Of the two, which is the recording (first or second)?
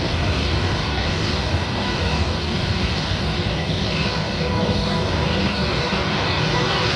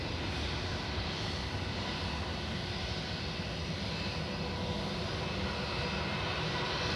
second